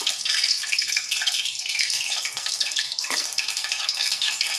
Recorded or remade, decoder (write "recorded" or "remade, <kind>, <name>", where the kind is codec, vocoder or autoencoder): remade, codec, SNAC